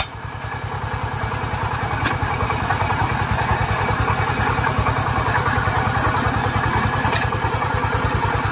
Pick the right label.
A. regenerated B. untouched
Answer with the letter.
B